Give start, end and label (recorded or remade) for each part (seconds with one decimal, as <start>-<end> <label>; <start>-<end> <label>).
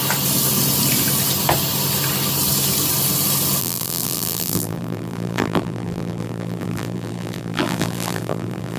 0.0-3.6 recorded; 3.6-8.8 remade